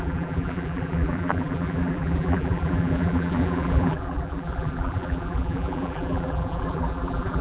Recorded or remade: remade